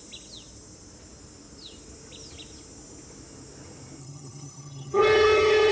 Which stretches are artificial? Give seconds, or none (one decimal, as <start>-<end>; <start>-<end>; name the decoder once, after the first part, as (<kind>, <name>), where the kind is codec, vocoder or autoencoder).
4.0-5.7 (vocoder, HiFi-GAN)